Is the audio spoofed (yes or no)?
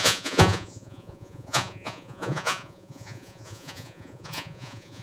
yes